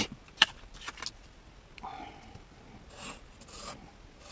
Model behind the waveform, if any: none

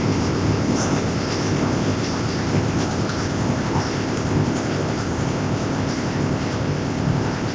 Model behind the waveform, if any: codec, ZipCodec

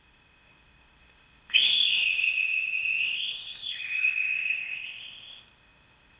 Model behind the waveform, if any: codec, ZipCodec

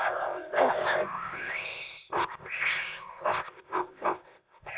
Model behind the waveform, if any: codec, ZipCodec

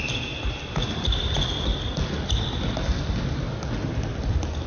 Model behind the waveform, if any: none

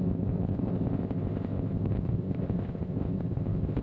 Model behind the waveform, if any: codec, ZipCodec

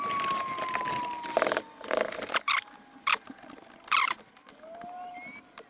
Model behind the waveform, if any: none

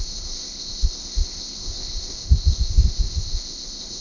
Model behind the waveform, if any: codec, ZipCodec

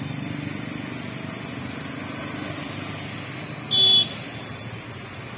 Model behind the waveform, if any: none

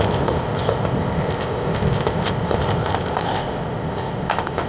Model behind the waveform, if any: codec, ZipCodec